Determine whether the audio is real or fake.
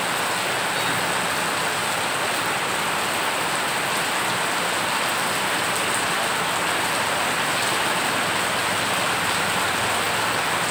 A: real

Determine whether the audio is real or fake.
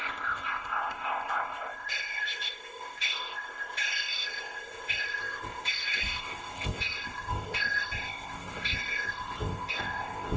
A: fake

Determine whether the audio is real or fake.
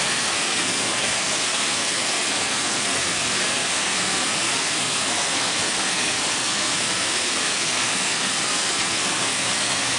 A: fake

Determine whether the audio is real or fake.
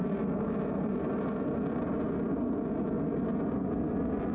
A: real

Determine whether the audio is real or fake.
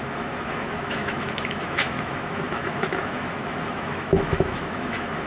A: fake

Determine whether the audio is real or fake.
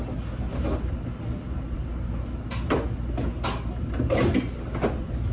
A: real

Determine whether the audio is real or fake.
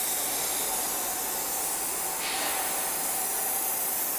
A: real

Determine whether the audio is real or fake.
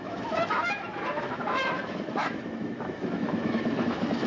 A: fake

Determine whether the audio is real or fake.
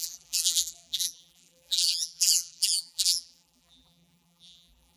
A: fake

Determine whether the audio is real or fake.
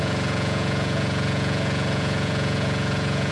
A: fake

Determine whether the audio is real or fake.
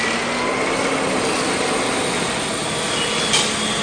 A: real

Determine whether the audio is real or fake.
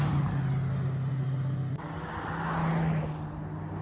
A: real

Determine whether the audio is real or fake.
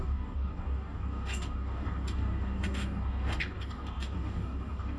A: fake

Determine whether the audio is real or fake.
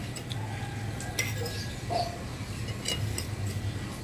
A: real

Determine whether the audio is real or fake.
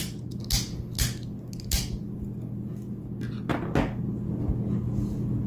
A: real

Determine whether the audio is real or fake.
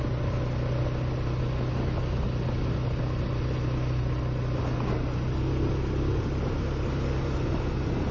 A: real